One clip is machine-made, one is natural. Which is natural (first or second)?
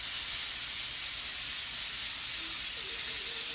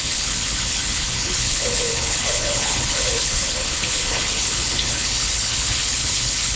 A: first